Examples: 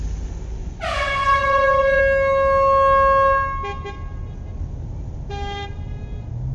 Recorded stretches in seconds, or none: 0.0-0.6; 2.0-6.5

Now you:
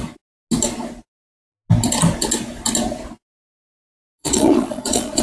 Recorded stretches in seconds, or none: 0.0-4.2

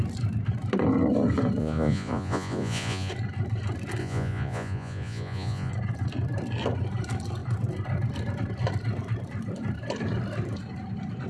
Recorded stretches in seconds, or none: 0.0-1.6; 3.1-4.0; 5.7-11.3

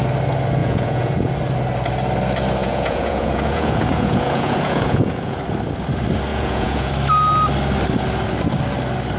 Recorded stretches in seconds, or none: 0.0-0.6; 1.3-2.6; 5.4-6.3; 6.9-9.2